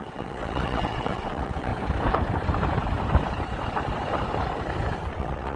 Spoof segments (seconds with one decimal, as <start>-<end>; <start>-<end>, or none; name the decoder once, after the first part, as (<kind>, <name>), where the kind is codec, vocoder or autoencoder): 0.0-1.7 (vocoder, WaveNeXt); 5.1-5.6